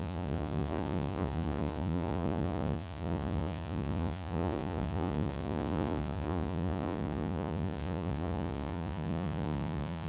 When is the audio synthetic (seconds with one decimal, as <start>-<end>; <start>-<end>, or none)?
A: 0.0-10.1